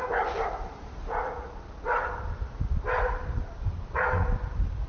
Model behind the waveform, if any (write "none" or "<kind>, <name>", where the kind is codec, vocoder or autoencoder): none